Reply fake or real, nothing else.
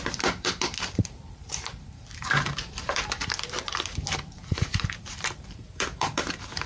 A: fake